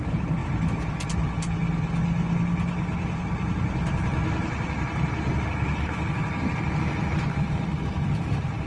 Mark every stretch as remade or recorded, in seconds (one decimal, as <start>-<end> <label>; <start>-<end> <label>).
0.0-8.7 recorded